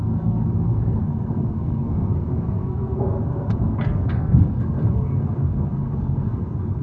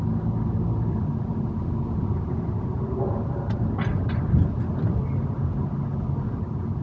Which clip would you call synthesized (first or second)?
first